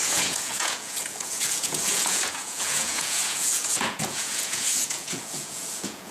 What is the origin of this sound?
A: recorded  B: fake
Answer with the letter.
B